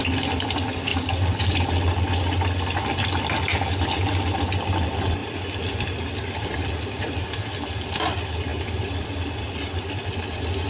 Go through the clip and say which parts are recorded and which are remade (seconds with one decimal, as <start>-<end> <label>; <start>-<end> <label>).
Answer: 0.0-5.2 recorded; 5.2-6.7 remade; 6.7-8.5 recorded; 8.5-9.1 remade; 9.1-10.7 recorded